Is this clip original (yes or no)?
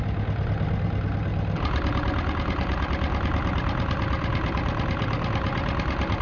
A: yes